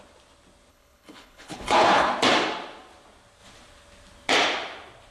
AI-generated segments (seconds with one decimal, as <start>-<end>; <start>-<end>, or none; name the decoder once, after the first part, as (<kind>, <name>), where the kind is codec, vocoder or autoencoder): 0.7-2.1 (codec, HILCodec)